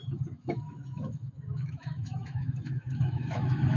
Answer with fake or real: fake